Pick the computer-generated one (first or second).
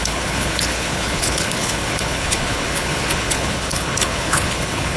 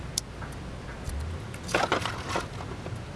first